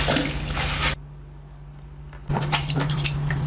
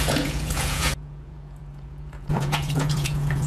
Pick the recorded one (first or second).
first